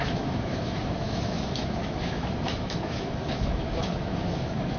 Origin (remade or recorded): remade